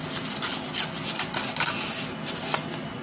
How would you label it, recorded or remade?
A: recorded